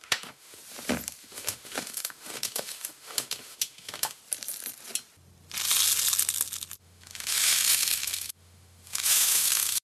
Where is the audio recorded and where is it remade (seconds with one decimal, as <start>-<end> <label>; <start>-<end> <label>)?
0.0-0.6 remade; 0.6-1.2 recorded; 1.2-4.2 remade; 4.2-6.8 recorded; 6.8-9.8 remade